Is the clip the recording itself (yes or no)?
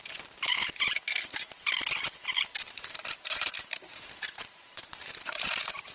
no